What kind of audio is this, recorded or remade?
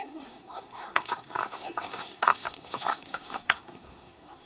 remade